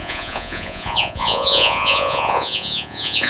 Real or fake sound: fake